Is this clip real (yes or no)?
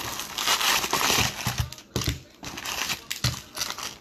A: yes